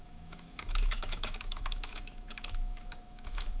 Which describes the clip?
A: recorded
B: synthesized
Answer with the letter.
B